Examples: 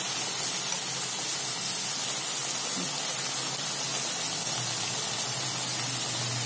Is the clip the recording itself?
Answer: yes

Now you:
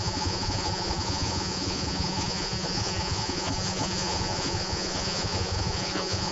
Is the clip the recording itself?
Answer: no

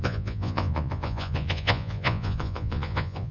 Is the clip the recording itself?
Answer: no